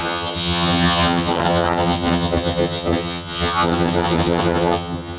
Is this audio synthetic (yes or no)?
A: yes